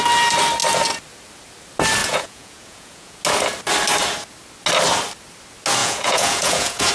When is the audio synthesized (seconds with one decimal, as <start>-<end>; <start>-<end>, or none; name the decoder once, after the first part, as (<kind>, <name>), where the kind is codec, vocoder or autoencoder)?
2.0-3.2 (vocoder, Vocos); 5.8-6.9